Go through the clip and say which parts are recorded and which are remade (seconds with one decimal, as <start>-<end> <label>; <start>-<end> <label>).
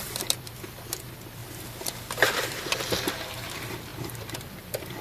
0.0-1.4 remade; 1.4-2.4 recorded; 2.4-5.0 remade